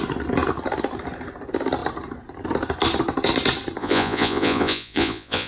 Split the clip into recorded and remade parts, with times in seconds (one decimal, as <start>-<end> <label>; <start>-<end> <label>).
0.0-3.8 recorded; 3.8-5.5 remade